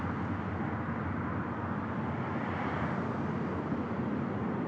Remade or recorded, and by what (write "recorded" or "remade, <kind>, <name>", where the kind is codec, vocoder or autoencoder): recorded